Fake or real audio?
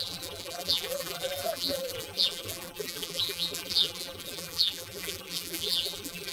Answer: fake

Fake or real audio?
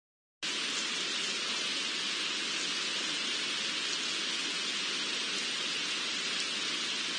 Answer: real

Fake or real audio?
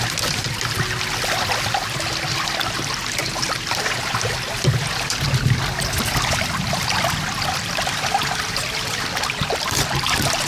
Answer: real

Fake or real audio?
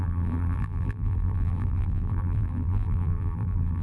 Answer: fake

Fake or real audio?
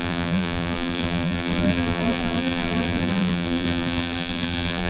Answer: fake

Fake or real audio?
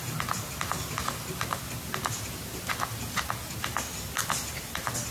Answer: real